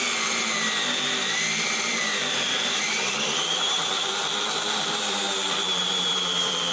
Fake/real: fake